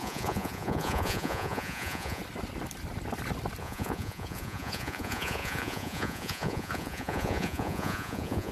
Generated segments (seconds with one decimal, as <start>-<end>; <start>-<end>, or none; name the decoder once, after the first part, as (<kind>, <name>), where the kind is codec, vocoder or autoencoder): 0.0-2.2 (vocoder, Vocos); 3.6-8.5